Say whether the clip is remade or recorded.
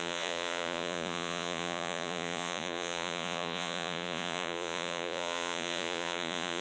remade